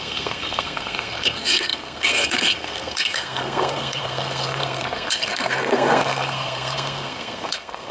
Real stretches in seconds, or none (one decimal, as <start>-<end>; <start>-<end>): none